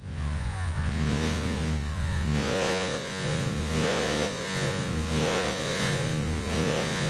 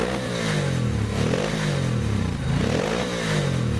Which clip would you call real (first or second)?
second